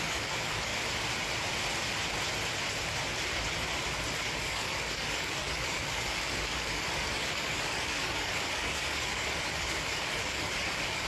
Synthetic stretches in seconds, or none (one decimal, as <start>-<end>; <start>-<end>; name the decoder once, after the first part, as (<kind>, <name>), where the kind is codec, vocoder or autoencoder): 0.0-0.7 (codec, DAC); 4.4-11.1